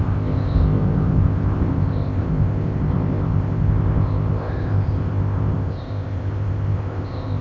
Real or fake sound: fake